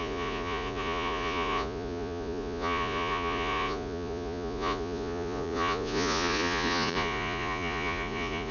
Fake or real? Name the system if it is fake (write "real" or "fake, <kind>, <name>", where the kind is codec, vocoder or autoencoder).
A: fake, vocoder, Vocos